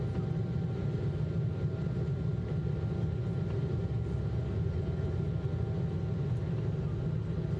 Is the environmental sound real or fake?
real